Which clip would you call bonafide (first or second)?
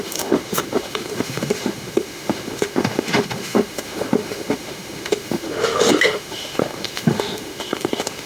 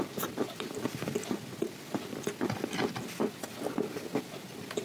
second